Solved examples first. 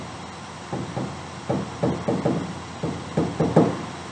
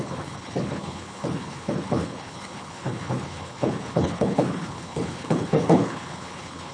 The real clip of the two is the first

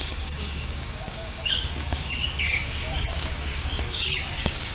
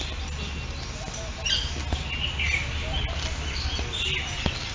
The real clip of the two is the second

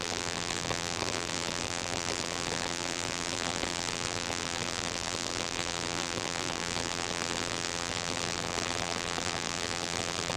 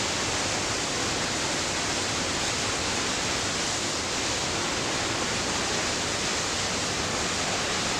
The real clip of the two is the second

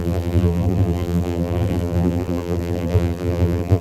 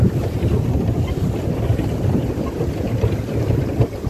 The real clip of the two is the second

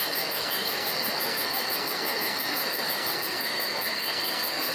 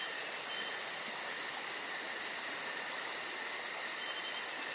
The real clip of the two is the second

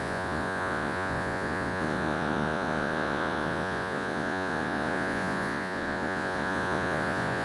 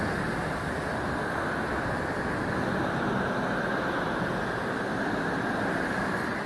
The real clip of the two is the second